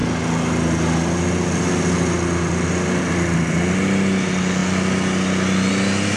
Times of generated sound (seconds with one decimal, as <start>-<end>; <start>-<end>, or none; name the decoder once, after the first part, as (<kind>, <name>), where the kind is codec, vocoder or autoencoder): none